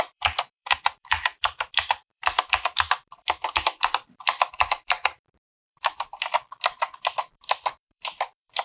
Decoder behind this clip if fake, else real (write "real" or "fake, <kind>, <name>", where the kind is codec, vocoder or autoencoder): fake, vocoder, BigVGAN v2